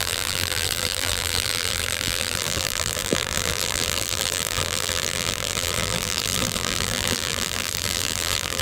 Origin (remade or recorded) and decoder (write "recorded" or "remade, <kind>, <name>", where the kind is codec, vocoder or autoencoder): remade, vocoder, BigVGAN v2